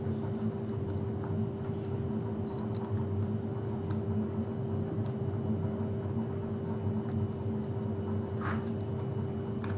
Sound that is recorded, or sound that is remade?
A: recorded